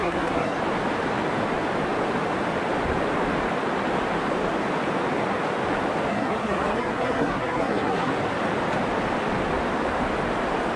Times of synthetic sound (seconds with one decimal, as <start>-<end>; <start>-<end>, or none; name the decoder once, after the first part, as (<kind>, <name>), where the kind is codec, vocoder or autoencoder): 0.0-0.6 (codec, SNAC); 6.1-8.1